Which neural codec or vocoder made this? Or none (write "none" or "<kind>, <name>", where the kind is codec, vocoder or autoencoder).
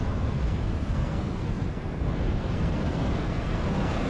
codec, SNAC